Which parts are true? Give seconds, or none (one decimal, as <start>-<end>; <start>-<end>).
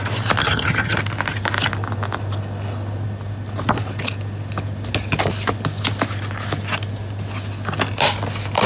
0.0-0.4; 1.0-8.7